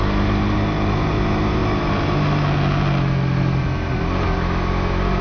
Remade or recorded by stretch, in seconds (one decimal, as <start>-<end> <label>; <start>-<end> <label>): 0.0-5.2 recorded